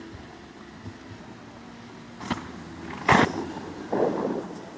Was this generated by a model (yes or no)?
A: no